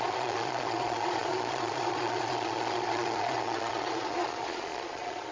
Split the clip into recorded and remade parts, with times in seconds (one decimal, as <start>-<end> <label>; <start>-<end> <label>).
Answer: 0.0-5.3 remade